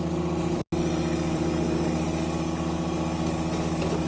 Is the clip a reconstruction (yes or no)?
no